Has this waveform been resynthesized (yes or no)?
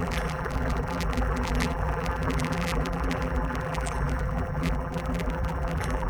yes